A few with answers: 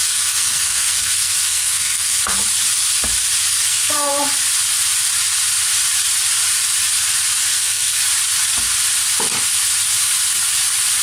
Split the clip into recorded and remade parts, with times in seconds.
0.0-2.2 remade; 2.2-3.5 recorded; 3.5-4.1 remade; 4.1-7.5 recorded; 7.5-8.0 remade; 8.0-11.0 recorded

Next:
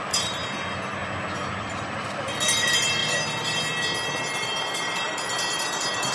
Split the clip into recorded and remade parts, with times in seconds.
0.0-1.0 remade; 1.0-1.5 recorded; 1.5-3.0 remade; 3.0-4.2 recorded; 4.2-6.1 remade

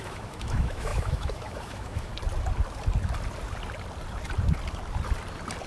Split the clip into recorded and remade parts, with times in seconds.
0.0-2.1 remade; 2.1-5.7 recorded

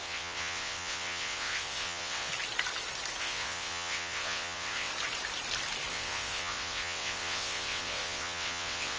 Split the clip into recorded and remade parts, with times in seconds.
0.0-2.3 remade; 2.3-3.2 recorded; 3.2-4.9 remade; 4.9-5.9 recorded; 5.9-9.0 remade